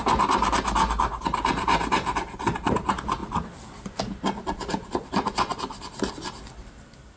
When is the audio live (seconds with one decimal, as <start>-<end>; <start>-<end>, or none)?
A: 0.0-7.2